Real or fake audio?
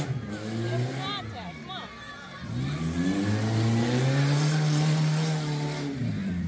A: real